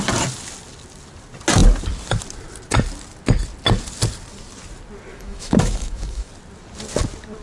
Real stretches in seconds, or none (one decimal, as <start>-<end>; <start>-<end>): 0.0-5.1; 6.3-7.4